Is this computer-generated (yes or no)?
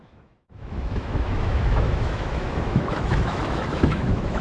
yes